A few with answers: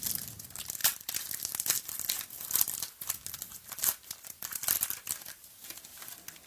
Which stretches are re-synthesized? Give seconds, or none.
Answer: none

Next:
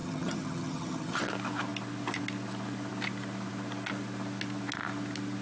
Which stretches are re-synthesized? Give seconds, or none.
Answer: 0.0-1.2 (vocoder, HiFi-GAN)